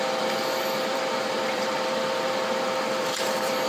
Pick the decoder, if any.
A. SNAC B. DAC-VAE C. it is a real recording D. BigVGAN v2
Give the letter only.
D